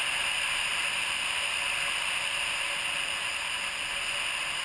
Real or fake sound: real